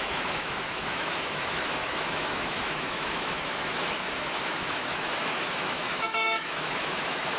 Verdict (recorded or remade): remade